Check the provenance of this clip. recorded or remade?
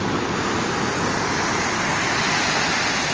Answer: recorded